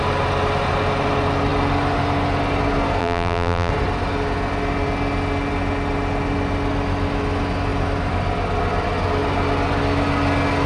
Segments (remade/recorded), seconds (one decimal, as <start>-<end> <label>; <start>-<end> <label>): 0.0-3.0 recorded; 3.0-3.7 remade; 3.7-10.7 recorded